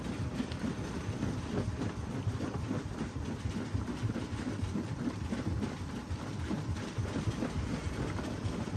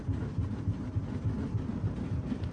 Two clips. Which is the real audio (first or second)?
second